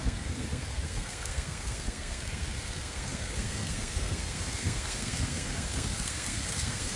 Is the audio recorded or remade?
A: remade